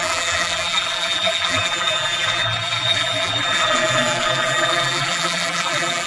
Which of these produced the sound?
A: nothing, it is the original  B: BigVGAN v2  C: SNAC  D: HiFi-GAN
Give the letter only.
B